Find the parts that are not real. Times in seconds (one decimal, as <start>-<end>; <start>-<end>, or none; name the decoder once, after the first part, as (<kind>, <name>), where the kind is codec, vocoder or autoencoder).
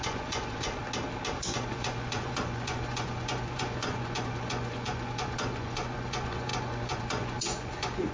0.0-0.8 (vocoder, Vocos); 1.4-8.1